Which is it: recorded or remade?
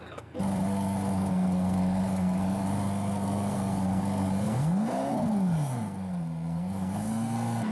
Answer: remade